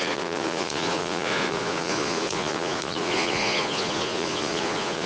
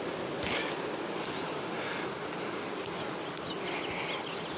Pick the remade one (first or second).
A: first